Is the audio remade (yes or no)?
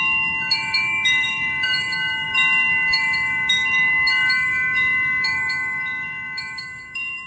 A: yes